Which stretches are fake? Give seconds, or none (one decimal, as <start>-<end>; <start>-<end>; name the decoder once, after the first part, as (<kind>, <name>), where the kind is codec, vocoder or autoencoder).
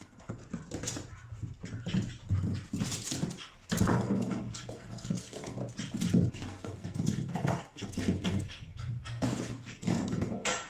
0.0-0.4 (codec, SNAC); 3.8-5.6; 6.3-10.7